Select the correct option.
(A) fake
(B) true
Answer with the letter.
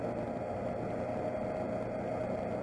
B